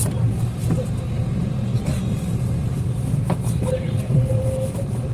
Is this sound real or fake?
fake